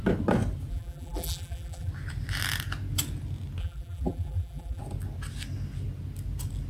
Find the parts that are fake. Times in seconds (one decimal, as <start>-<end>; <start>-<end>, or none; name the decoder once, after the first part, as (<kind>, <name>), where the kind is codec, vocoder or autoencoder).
0.7-1.9 (vocoder, BigVGAN v2); 3.6-4.8